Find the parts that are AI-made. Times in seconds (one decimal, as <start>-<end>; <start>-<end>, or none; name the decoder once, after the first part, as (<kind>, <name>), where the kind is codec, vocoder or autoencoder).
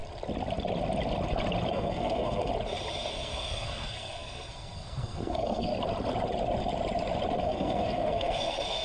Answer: 1.7-2.5 (codec, SNAC); 3.1-5.7; 7.4-8.8